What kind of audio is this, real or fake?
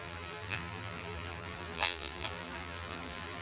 fake